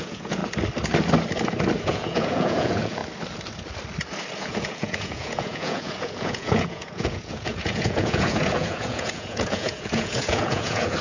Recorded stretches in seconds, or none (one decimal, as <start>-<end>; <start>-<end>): 0.4-1.8; 3.0-4.4